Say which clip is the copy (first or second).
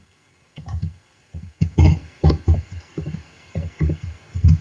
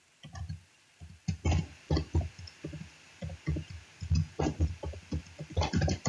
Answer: first